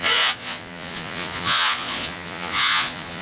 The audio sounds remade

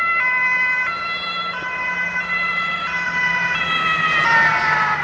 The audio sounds recorded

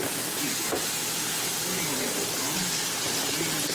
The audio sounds recorded